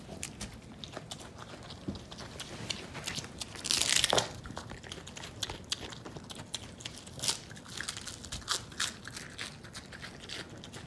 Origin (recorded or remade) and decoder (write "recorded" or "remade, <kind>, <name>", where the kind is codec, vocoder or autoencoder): recorded